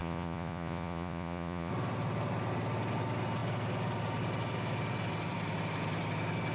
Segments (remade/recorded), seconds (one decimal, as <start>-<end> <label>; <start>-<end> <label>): 0.0-1.7 remade; 1.7-6.5 recorded

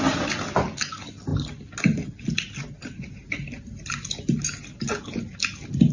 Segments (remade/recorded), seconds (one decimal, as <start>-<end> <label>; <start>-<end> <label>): 0.0-5.9 recorded

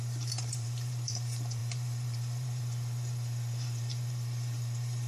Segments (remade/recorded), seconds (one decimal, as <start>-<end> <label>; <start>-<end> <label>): 0.0-5.1 remade

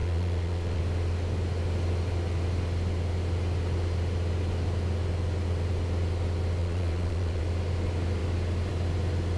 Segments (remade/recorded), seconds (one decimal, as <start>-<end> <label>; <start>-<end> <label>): 0.0-0.8 remade; 0.8-6.6 recorded; 6.6-7.4 remade; 7.4-9.4 recorded